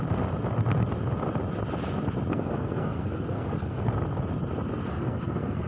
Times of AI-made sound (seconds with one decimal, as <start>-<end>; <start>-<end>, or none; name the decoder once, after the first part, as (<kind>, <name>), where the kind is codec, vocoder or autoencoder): 2.3-3.9 (codec, SNAC); 4.9-5.7